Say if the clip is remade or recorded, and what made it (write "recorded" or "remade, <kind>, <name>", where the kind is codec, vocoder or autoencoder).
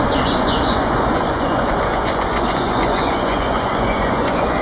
remade, vocoder, Vocos